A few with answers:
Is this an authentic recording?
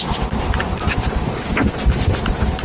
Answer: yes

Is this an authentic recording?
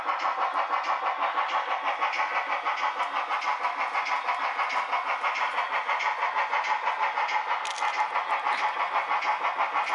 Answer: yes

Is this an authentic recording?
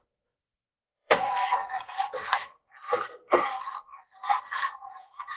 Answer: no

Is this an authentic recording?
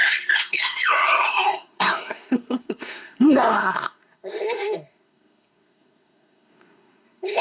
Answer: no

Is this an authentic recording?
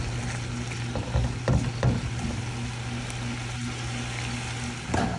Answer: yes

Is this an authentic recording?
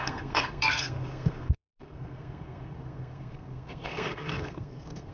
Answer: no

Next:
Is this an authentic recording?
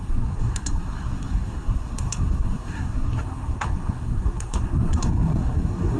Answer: no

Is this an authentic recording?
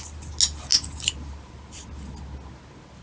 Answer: yes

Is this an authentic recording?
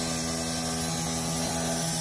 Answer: yes